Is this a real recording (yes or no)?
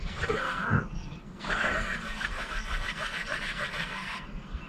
no